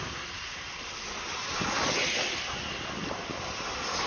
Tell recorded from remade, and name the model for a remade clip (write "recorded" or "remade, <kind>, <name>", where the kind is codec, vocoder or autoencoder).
recorded